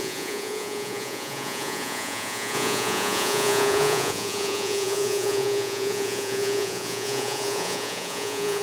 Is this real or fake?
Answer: fake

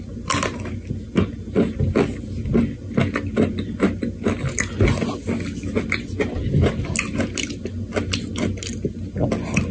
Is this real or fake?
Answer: real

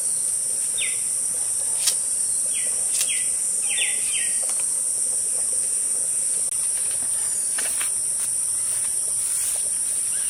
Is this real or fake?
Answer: real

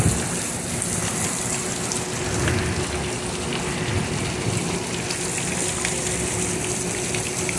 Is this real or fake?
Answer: real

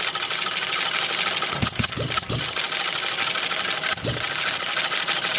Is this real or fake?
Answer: real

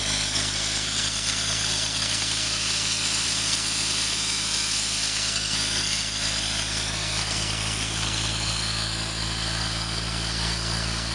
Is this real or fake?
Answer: fake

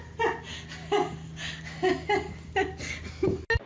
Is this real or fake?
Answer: real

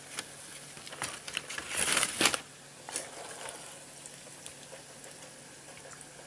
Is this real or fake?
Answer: real